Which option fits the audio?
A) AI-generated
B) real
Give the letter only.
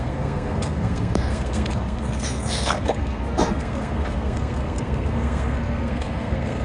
A